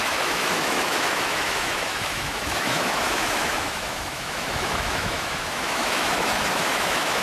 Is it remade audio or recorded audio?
remade